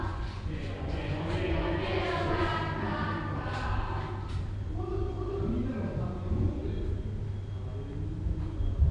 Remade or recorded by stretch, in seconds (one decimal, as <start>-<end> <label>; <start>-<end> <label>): 0.0-2.5 remade; 2.5-6.0 recorded; 6.0-6.6 remade; 6.6-8.1 recorded; 8.1-8.9 remade